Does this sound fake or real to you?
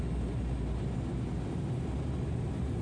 real